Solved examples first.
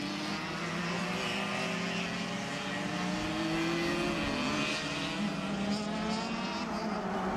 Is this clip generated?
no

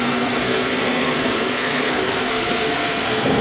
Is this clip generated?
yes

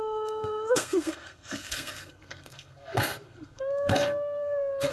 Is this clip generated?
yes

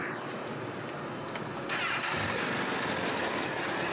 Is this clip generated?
no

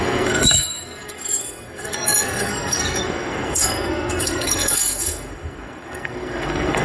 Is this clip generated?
yes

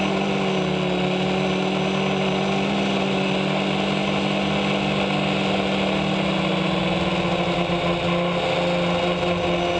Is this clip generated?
no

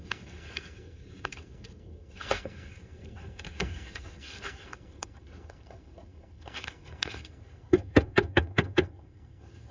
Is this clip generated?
yes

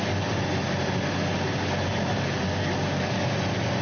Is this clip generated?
no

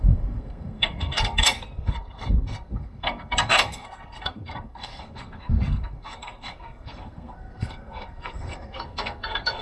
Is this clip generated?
yes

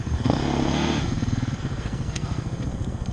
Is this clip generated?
yes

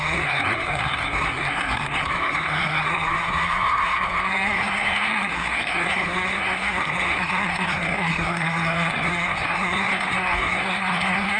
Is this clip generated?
yes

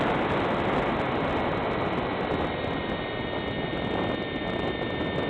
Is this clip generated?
no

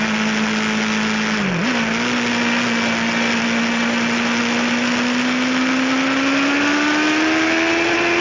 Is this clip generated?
no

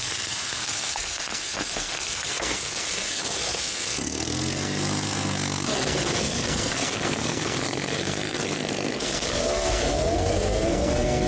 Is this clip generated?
yes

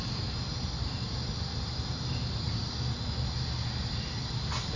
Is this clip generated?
no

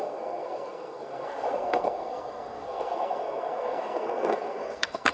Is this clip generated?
yes